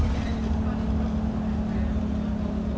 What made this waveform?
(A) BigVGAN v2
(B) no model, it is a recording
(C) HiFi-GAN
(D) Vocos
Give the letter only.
B